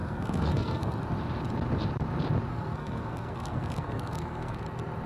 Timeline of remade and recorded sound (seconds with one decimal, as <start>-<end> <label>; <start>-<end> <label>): 0.0-1.0 remade; 1.0-2.5 recorded; 2.5-4.6 remade; 4.6-5.1 recorded